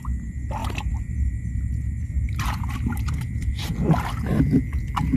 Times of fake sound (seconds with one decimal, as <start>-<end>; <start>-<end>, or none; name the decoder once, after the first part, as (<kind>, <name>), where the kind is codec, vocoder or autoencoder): 0.6-3.7 (vocoder, BigVGAN v2)